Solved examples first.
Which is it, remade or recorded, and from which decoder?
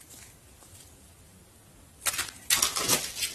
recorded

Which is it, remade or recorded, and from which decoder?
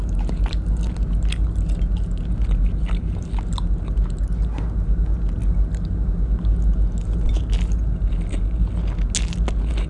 recorded